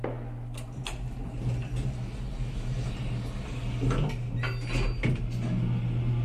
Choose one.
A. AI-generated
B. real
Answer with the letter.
B